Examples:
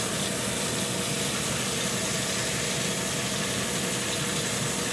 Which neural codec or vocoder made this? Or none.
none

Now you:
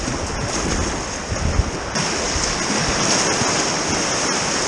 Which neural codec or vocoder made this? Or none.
none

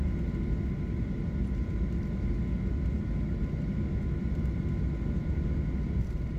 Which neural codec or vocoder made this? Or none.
none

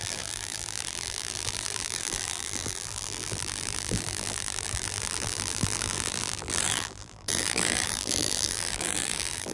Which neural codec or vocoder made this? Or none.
vocoder, BigVGAN v2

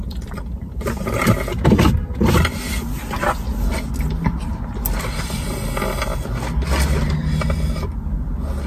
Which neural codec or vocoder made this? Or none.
none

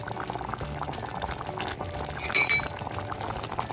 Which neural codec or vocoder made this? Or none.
none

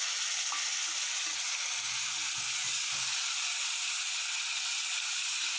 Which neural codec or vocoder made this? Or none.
none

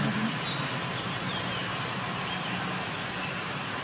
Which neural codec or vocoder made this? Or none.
none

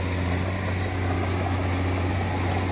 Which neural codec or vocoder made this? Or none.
none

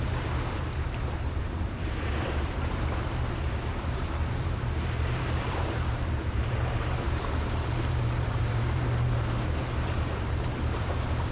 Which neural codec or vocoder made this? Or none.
vocoder, BigVGAN v2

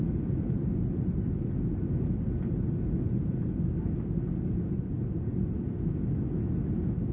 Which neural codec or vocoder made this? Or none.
none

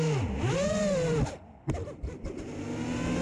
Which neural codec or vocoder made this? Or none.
none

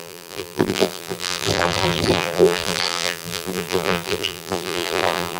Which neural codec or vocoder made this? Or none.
vocoder, BigVGAN v2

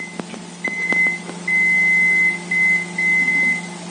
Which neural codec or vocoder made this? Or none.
none